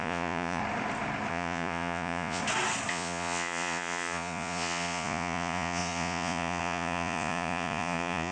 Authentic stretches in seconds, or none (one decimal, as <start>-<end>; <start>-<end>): 0.6-1.3; 2.4-2.9